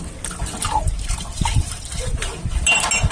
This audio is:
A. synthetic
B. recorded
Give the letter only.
B